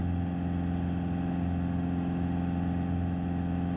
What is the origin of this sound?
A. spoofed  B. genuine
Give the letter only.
B